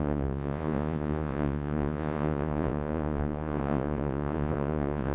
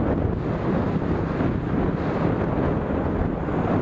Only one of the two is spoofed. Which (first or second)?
first